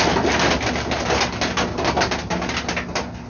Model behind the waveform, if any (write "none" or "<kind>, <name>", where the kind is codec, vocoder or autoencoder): none